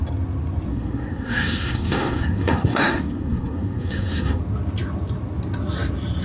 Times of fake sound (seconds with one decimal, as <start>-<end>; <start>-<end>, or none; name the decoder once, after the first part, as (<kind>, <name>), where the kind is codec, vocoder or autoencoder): 0.7-4.4 (codec, SNAC)